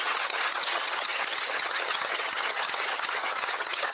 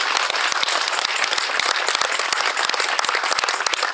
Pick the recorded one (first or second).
second